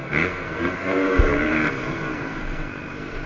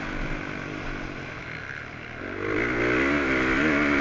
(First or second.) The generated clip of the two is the first